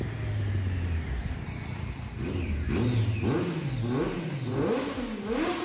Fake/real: real